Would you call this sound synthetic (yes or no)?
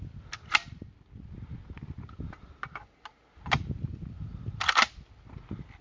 no